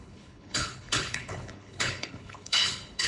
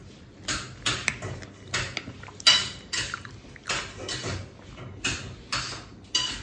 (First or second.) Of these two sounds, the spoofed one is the first